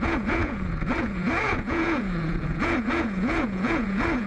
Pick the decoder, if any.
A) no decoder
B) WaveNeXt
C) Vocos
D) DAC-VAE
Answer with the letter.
C